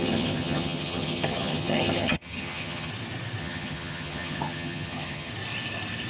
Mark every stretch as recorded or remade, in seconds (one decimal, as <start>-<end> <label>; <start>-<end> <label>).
0.0-2.9 remade; 2.9-3.4 recorded; 3.4-5.3 remade; 5.3-6.1 recorded